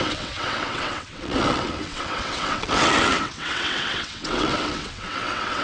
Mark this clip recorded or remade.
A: remade